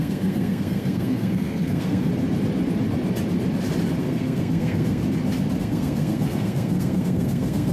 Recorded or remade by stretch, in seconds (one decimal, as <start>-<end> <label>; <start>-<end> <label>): 0.0-2.1 remade; 2.1-4.0 recorded; 4.0-5.0 remade; 5.0-5.6 recorded; 5.6-7.7 remade